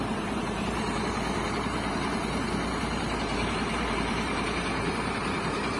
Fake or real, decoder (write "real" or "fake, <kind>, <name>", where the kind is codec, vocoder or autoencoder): fake, vocoder, BigVGAN v2